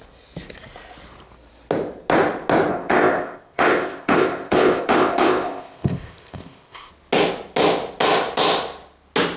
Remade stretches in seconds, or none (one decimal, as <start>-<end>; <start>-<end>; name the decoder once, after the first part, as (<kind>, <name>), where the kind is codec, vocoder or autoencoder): 2.7-6.9 (codec, ZipCodec)